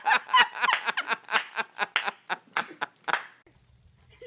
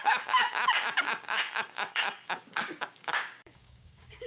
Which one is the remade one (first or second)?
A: second